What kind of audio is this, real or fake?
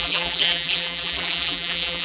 fake